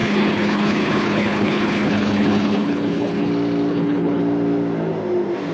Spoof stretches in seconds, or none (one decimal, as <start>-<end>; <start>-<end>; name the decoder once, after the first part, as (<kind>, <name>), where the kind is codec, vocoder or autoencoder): 0.0-3.3 (codec, HILCodec); 3.7-4.2